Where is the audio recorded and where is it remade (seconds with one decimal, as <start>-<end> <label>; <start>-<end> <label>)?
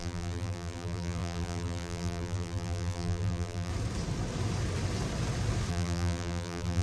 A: 0.0-3.7 remade; 3.7-5.7 recorded; 5.7-6.8 remade